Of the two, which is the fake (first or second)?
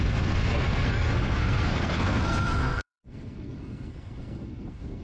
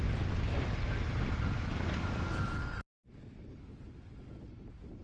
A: first